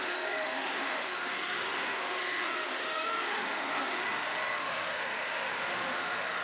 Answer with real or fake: fake